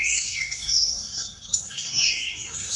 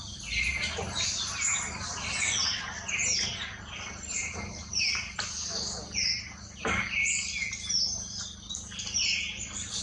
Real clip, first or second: second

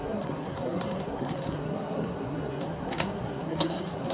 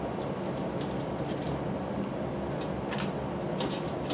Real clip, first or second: second